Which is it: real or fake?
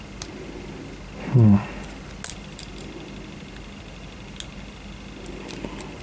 real